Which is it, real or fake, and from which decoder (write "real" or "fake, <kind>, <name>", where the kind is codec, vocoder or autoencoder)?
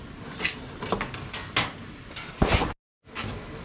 real